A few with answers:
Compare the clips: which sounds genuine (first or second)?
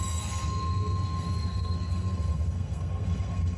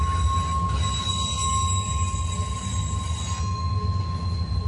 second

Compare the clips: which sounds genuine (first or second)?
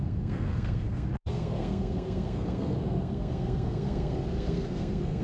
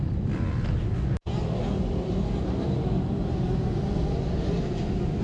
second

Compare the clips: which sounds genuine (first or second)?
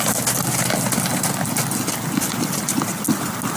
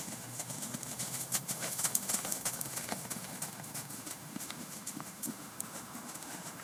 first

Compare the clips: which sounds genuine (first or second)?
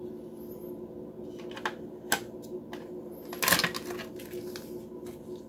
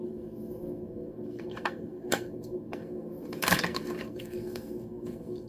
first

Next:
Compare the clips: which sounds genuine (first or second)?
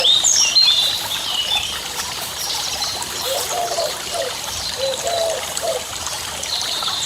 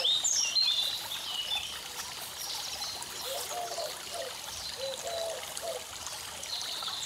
second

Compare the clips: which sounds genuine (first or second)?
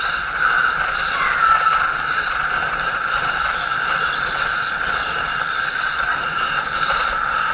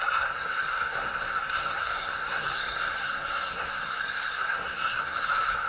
first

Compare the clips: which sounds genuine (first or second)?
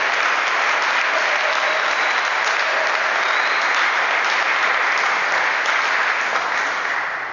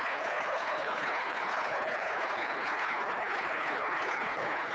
first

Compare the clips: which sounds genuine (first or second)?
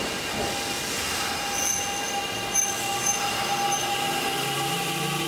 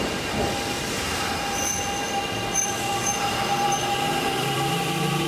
first